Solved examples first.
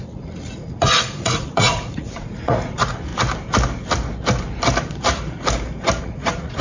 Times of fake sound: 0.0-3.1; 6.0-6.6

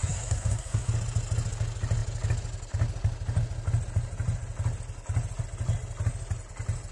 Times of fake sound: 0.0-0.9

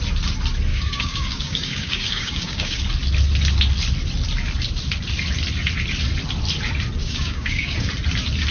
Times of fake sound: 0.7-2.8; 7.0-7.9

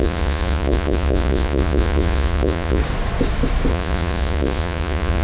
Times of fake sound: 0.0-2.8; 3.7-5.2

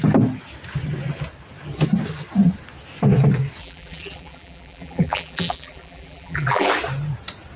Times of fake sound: 3.6-6.7

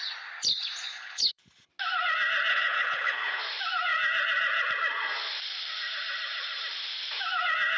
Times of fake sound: 0.9-1.7; 2.5-3.4

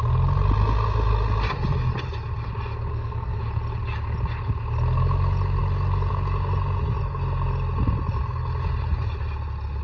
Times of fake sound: 2.9-3.4

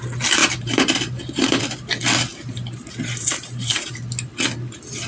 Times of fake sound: 0.4-1.6; 2.3-3.9